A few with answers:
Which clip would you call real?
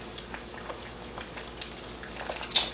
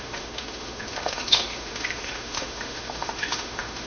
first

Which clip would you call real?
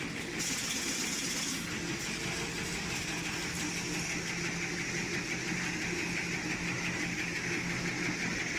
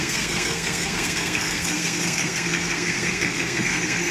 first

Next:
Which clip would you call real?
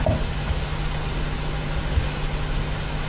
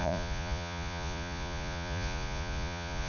first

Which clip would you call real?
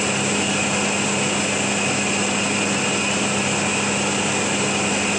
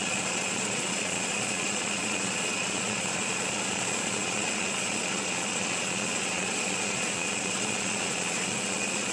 first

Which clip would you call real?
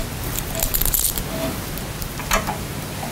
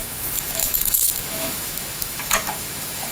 first